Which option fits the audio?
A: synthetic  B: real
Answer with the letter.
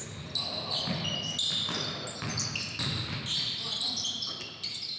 B